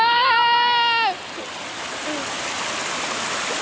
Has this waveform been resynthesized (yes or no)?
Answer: no